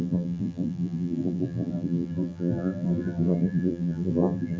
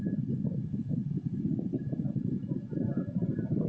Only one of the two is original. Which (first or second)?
second